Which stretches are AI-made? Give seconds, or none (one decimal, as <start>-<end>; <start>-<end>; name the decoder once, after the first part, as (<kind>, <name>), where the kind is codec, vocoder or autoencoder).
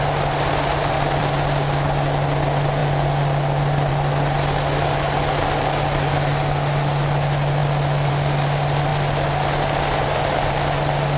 none